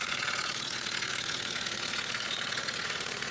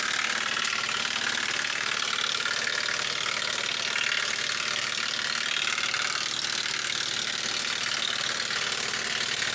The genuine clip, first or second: second